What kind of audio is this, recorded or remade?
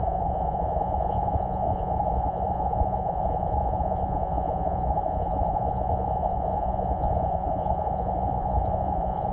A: remade